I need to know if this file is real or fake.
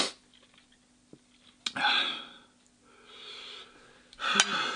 real